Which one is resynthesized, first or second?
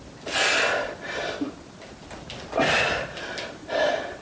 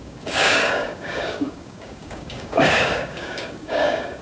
second